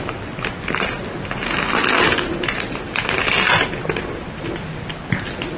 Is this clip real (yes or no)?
yes